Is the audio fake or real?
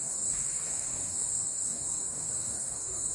fake